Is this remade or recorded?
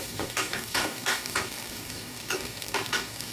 remade